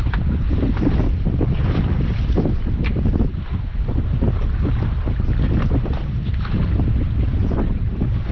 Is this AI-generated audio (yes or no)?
no